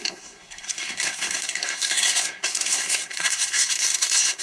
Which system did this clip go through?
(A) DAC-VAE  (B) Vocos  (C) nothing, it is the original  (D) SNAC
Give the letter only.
D